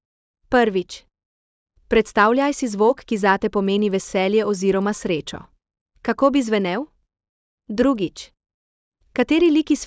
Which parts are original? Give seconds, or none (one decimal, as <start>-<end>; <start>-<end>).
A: 0.0-9.9